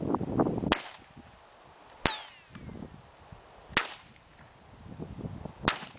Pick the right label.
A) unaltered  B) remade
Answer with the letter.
A